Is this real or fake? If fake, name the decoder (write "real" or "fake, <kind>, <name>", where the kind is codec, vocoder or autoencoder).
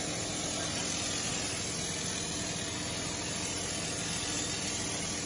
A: real